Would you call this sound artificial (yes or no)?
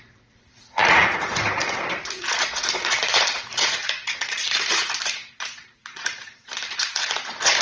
yes